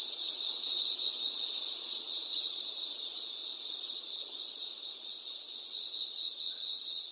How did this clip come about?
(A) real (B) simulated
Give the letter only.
B